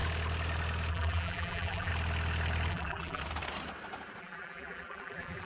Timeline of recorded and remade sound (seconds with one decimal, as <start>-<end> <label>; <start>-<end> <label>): 0.0-0.9 recorded; 0.9-1.9 remade; 1.9-2.7 recorded; 2.7-3.2 remade; 3.2-4.2 recorded; 4.2-5.5 remade